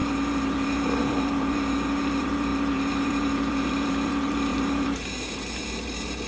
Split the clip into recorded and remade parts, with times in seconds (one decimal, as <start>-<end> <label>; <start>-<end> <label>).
0.0-6.3 remade